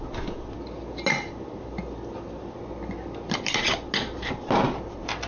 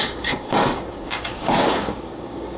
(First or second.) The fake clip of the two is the second